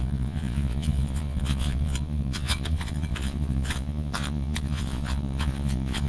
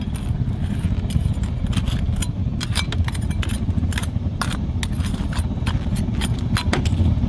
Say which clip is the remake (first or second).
first